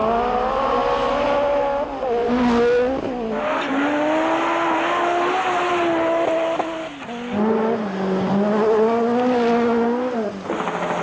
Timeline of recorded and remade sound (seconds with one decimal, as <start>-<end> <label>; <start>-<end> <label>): 0.0-11.0 recorded